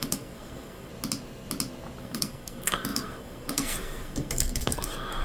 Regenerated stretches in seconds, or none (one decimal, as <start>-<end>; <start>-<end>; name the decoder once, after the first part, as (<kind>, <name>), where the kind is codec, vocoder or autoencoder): 0.0-0.9 (codec, SNAC); 2.0-5.2